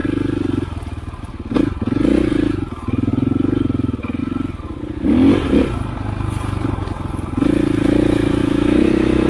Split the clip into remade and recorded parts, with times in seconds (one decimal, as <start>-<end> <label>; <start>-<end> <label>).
0.0-8.4 recorded; 8.4-9.3 remade